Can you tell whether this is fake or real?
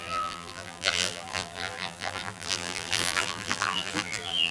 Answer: fake